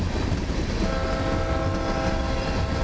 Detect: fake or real real